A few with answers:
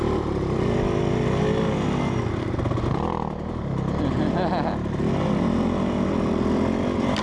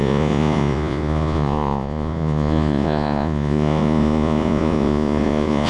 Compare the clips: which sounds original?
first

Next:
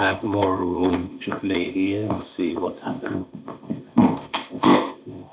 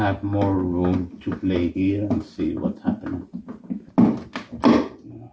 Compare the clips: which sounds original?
second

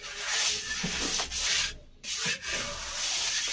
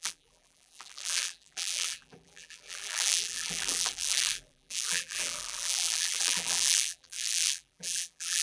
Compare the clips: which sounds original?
first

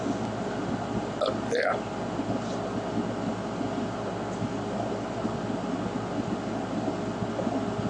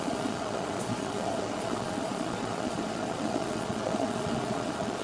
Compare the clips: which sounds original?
first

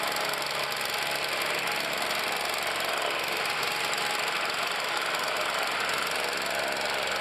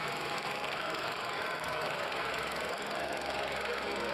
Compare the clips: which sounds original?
first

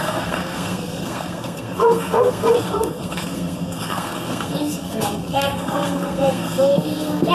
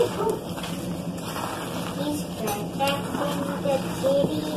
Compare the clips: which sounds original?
second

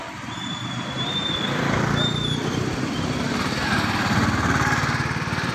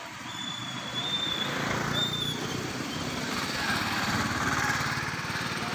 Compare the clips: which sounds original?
first